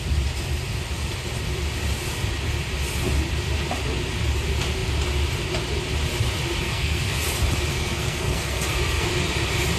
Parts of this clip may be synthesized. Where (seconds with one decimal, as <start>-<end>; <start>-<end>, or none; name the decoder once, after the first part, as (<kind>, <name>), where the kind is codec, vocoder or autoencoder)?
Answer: 6.6-7.2 (codec, SNAC); 7.7-9.1